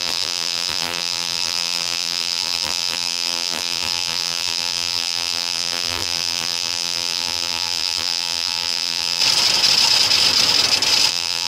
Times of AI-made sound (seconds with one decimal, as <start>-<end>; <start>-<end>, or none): 0.0-9.2; 11.1-11.5